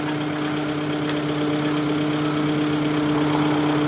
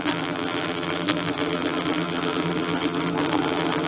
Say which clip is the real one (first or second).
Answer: first